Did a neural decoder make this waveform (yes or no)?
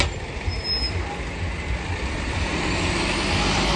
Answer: no